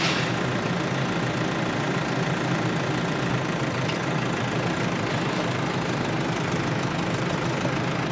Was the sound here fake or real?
fake